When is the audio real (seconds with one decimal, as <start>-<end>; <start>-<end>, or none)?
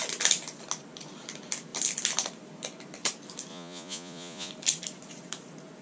0.0-3.5; 4.5-5.8